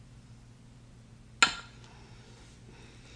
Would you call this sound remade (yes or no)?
no